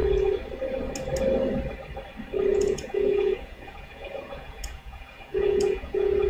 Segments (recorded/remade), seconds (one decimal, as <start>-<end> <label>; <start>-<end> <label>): 0.0-2.5 recorded; 2.5-6.3 remade